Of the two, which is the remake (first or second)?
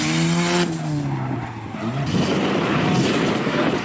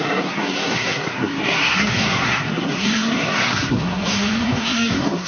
second